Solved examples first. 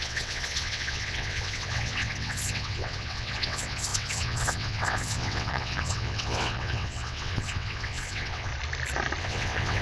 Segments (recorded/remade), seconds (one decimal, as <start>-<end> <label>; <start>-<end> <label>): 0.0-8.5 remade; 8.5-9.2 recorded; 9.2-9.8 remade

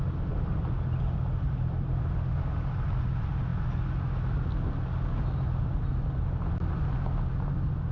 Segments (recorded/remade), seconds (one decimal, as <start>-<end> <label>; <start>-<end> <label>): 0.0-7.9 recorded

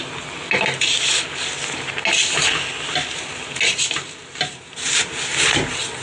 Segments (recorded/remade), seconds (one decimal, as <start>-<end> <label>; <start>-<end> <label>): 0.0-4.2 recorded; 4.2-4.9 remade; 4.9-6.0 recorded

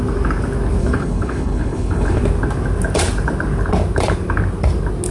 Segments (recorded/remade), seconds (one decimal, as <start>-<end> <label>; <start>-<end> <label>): 0.0-0.8 recorded; 0.8-2.2 remade; 2.2-5.1 recorded